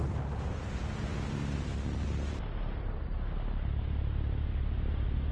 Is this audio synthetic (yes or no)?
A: no